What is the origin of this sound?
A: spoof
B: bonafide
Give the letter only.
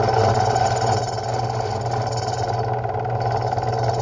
B